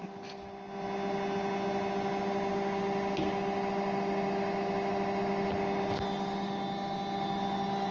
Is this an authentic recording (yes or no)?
yes